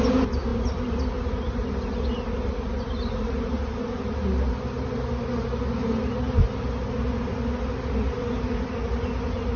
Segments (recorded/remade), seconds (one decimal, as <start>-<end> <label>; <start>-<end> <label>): 0.0-9.6 recorded